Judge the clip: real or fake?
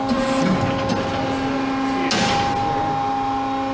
real